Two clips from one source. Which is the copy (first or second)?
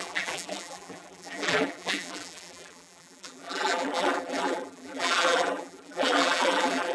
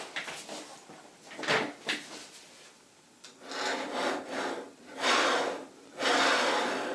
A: first